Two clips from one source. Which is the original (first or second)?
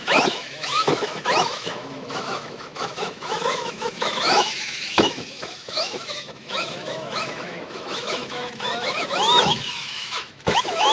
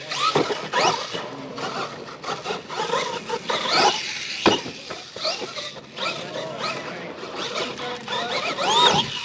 second